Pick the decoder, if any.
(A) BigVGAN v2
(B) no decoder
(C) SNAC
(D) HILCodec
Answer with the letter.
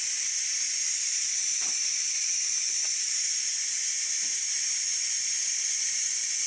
B